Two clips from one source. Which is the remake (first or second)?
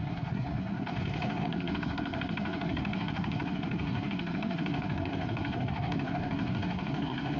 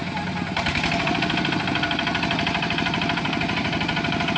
first